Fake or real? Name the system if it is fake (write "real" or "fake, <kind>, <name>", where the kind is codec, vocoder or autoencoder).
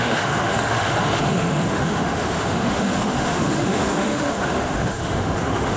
fake, autoencoder, DAC-VAE